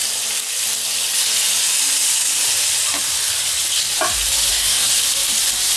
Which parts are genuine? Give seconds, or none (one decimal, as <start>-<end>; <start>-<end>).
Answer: 0.0-4.5; 5.0-5.8